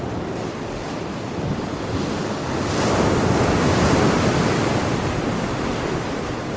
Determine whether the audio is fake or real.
real